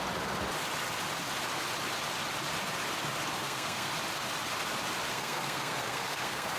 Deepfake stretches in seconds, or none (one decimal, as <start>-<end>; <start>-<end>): 3.4-3.9; 5.1-6.6